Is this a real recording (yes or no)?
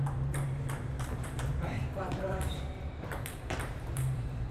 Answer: no